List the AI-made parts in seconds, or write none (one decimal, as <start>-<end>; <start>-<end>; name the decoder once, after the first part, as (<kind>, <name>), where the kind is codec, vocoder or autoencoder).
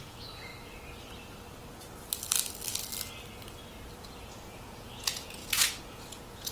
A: 0.0-0.5 (vocoder, Vocos); 4.0-6.5